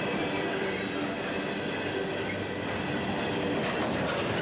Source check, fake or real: real